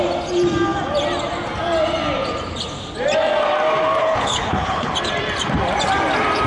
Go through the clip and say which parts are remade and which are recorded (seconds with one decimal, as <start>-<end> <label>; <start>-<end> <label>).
0.0-4.0 recorded; 4.0-4.9 remade; 4.9-6.5 recorded

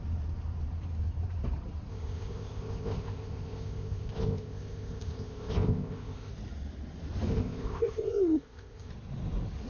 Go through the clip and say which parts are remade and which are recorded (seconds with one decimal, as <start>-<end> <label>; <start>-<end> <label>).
0.0-1.9 recorded; 1.9-6.3 remade; 6.3-7.3 recorded; 7.3-8.9 remade; 8.9-9.7 recorded

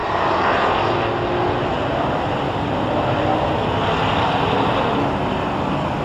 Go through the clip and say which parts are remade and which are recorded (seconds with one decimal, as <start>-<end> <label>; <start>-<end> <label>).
0.0-6.0 recorded